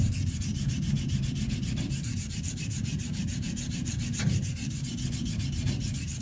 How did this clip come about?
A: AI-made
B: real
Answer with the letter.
A